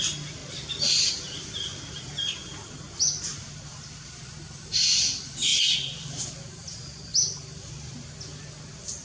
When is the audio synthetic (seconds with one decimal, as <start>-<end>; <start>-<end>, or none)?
3.3-4.2; 5.5-6.2; 7.1-7.7